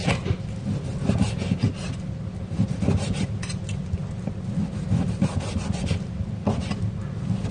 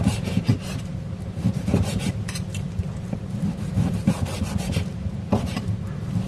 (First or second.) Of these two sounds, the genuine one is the first